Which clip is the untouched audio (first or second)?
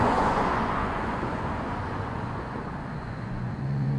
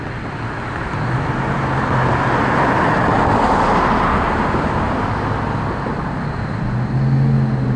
second